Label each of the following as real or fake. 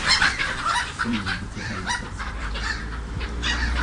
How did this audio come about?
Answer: fake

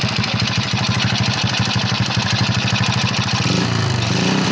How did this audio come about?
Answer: real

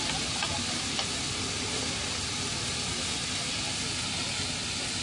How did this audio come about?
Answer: real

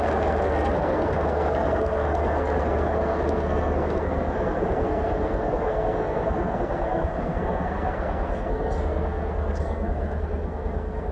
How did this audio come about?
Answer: fake